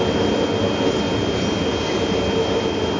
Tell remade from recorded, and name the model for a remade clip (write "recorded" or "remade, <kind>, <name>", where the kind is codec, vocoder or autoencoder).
recorded